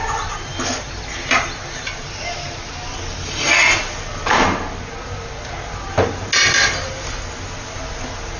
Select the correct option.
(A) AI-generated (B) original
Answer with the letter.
B